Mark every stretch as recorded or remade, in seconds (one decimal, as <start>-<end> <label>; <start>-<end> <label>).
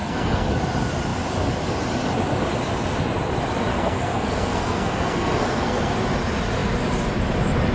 0.0-0.5 remade; 0.5-3.7 recorded; 3.7-5.9 remade; 5.9-7.7 recorded